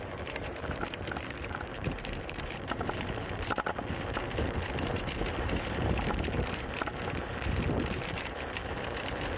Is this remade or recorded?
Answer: remade